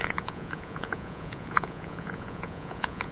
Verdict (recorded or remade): remade